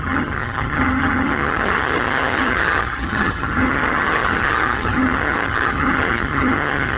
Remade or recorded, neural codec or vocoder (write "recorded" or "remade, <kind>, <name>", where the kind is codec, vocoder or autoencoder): remade, vocoder, HiFi-GAN